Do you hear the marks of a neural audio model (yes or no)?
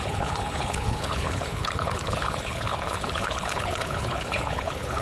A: yes